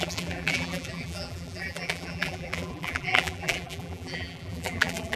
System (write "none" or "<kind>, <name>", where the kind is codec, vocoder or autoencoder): vocoder, BigVGAN v2